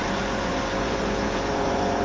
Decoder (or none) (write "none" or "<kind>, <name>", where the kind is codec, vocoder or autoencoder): vocoder, Vocos